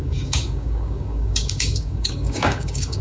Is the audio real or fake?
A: fake